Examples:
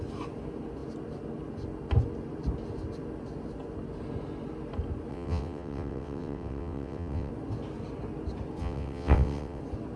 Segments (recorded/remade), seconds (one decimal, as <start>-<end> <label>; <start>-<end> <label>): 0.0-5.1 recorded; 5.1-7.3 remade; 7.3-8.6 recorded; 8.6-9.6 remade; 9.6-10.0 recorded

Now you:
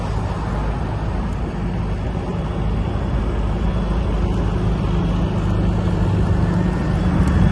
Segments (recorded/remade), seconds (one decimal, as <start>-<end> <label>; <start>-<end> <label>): 0.0-7.5 recorded

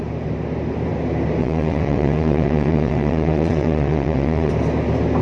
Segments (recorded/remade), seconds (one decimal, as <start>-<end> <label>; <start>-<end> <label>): 0.0-1.4 recorded; 1.4-4.5 remade; 4.5-5.2 recorded

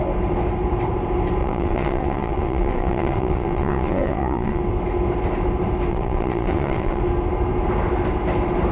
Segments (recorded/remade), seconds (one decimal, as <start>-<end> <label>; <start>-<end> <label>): 0.0-1.4 recorded; 1.4-4.6 remade; 4.6-5.9 recorded; 5.9-7.0 remade; 7.0-8.7 recorded